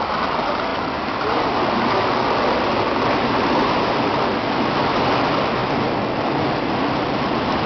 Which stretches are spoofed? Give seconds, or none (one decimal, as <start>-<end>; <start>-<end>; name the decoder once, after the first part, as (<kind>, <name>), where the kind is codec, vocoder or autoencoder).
none